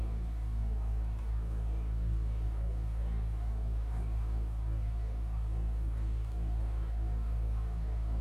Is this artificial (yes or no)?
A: yes